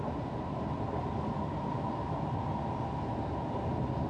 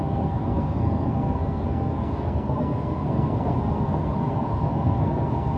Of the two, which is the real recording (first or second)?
first